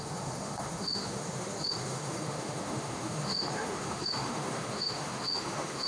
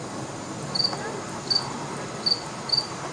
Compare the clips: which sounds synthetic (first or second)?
first